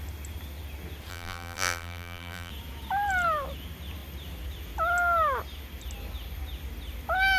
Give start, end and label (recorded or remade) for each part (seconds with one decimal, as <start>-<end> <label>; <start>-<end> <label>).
0.0-1.1 recorded; 1.1-2.5 remade; 2.5-7.4 recorded